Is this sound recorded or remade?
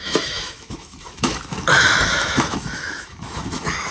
remade